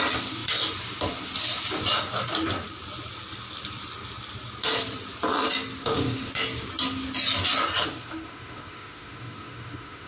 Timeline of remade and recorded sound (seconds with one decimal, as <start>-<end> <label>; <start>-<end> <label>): 0.0-5.8 recorded; 5.8-6.3 remade; 6.3-7.8 recorded; 7.8-10.1 remade

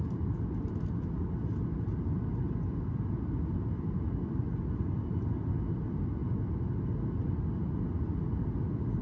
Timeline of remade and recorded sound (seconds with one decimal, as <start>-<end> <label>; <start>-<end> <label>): 0.0-9.0 recorded

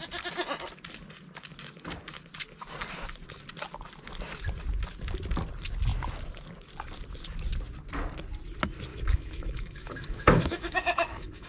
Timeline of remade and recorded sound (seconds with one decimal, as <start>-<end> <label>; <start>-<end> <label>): 0.0-8.9 recorded; 8.9-11.5 remade